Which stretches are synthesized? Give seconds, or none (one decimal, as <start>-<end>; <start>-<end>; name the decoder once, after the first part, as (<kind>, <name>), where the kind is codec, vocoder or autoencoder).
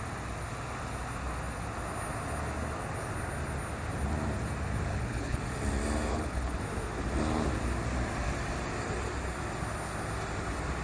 4.9-5.4 (codec, HILCodec); 6.1-6.6